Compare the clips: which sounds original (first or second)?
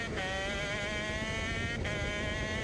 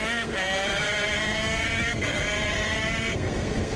first